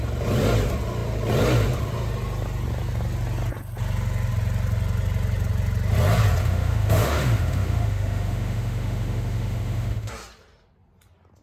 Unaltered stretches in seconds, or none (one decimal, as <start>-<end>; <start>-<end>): 0.0-6.4; 10.1-11.4